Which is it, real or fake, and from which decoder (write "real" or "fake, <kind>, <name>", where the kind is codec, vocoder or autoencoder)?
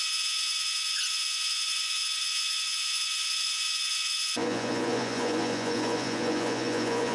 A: fake, vocoder, Vocos